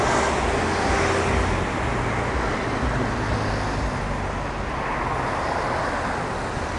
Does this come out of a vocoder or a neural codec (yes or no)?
no